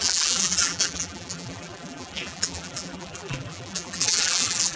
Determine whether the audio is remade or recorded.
remade